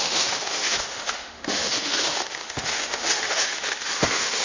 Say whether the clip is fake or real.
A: fake